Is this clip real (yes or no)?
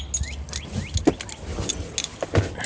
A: yes